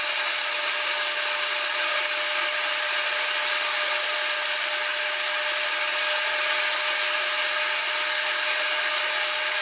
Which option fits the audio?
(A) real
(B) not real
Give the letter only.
A